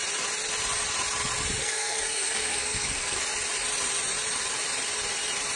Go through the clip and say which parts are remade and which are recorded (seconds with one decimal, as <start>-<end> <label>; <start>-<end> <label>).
0.0-1.6 recorded; 1.6-3.2 remade; 3.2-5.6 recorded

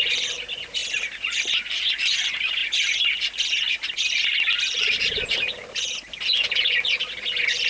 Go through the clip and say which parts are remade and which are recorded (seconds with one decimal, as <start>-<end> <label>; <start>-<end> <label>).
0.0-7.7 recorded

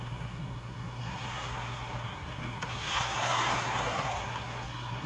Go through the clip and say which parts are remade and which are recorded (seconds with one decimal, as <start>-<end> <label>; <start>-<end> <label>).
0.0-5.1 remade